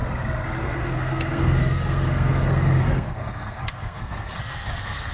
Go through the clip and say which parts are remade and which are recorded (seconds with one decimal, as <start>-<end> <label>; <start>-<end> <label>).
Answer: 0.0-0.6 recorded; 0.6-5.1 remade